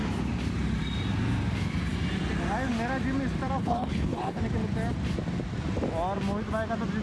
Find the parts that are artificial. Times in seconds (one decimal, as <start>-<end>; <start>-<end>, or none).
3.6-4.4